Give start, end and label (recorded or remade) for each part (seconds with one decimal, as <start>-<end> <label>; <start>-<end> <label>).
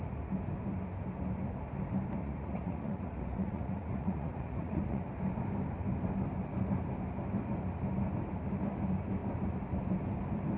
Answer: 0.0-2.2 recorded; 2.2-5.0 remade; 5.0-10.6 recorded